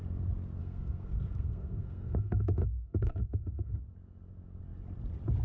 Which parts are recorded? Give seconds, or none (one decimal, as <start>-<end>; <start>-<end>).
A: 0.0-0.6; 3.8-5.4